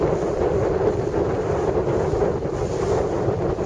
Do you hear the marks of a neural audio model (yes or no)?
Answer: no